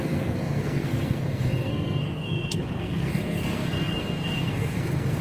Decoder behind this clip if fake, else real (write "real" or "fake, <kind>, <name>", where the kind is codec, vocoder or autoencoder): fake, codec, SNAC